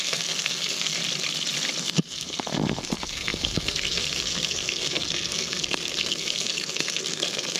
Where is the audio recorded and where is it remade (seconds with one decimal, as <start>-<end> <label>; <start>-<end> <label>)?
0.0-1.0 remade; 1.0-1.8 recorded; 1.8-7.6 remade